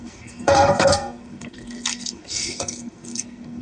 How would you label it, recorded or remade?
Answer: remade